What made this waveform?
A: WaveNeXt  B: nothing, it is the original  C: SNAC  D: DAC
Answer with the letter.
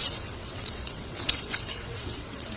A